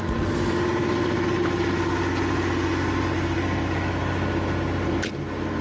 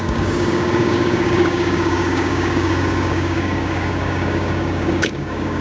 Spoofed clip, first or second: second